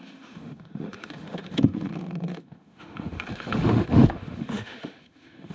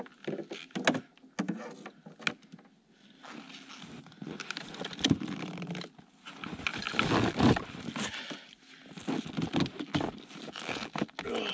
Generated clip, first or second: first